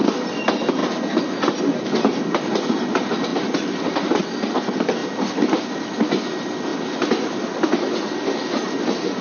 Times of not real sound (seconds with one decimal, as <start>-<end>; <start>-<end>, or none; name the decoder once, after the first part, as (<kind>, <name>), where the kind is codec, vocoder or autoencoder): none